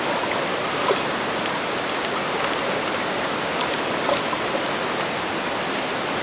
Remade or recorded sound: recorded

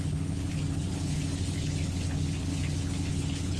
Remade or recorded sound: remade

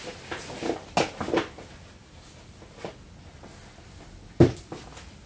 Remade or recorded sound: recorded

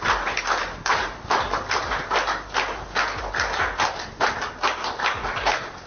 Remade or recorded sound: recorded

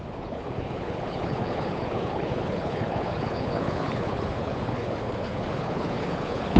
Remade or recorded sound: remade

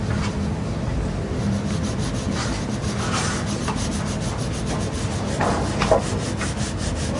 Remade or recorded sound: recorded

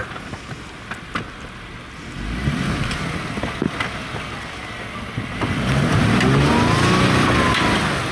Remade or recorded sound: recorded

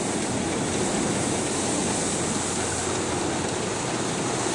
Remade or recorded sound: recorded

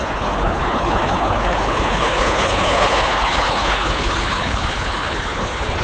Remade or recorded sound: remade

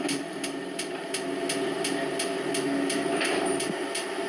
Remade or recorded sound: recorded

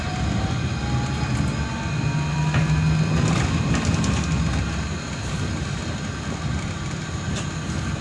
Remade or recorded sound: recorded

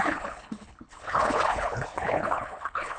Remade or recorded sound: remade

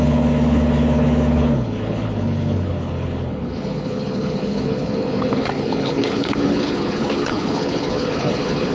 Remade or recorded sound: remade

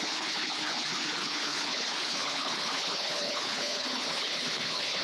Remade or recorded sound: remade